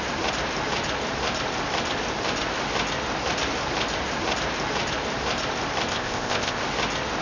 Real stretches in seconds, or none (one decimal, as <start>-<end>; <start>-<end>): 0.0-5.9; 6.6-7.2